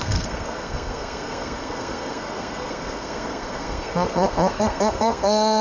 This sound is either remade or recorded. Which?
remade